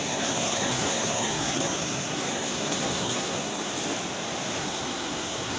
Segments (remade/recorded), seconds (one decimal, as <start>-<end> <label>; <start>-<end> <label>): 0.0-3.7 remade; 3.7-4.6 recorded; 4.6-5.6 remade